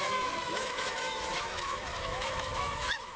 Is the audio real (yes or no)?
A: no